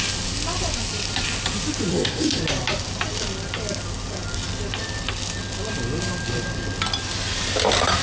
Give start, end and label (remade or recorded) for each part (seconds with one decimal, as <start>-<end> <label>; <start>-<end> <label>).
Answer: 0.0-1.9 recorded; 1.9-2.4 remade; 2.4-8.0 recorded